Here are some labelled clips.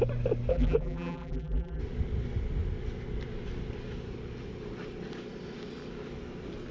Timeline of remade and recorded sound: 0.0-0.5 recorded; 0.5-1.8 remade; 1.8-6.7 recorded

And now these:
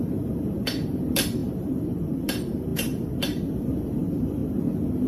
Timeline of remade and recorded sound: 0.0-4.4 remade; 4.4-5.1 recorded

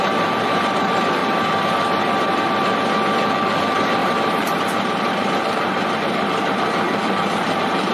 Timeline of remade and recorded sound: 0.0-1.2 remade; 1.2-3.6 recorded; 3.6-7.9 remade

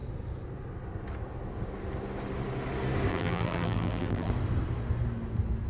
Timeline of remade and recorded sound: 0.0-3.1 recorded; 3.1-4.3 remade; 4.3-5.7 recorded

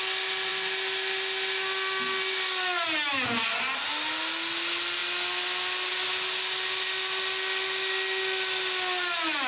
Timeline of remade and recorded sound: 0.0-9.5 recorded

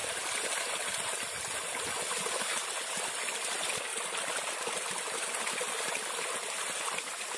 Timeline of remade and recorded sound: 0.0-7.4 recorded